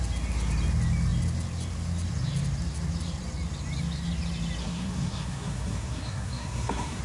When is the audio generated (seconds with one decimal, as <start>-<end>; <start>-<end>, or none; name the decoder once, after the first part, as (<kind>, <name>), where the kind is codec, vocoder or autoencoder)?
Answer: 4.6-7.0 (codec, SNAC)